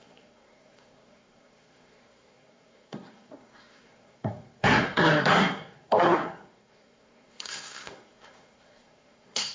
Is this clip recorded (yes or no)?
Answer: no